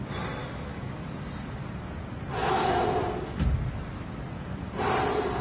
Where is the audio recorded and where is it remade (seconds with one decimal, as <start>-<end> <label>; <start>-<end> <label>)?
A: 0.0-0.4 recorded; 0.4-0.9 remade; 0.9-2.4 recorded; 2.4-3.0 remade; 3.0-5.4 recorded